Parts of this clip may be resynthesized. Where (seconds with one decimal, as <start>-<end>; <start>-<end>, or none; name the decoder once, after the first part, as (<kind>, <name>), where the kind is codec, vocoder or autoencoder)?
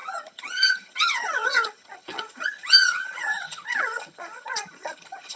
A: 0.0-5.4 (vocoder, HiFi-GAN)